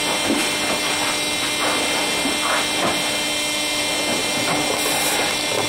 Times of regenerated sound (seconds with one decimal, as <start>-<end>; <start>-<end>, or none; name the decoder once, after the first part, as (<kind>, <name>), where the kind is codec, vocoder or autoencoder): none